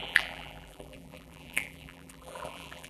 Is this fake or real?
fake